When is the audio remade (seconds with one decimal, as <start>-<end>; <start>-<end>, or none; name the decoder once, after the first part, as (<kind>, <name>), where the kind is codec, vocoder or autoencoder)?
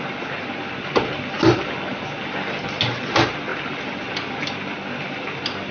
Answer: none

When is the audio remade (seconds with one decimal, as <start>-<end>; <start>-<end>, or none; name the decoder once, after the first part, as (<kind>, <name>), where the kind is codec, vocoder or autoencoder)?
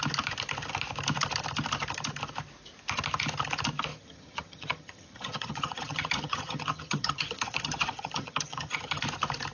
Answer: 3.9-9.0 (vocoder, HiFi-GAN)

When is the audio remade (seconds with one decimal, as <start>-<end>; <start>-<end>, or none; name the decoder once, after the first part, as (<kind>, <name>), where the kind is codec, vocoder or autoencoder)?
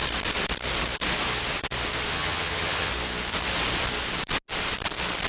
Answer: 2.1-2.9 (vocoder, HiFi-GAN)